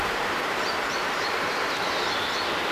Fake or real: fake